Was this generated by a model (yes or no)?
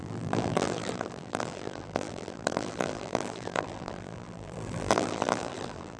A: yes